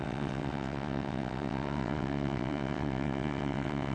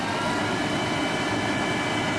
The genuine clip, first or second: second